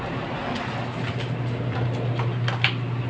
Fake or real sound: real